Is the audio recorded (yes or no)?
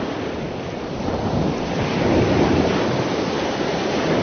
yes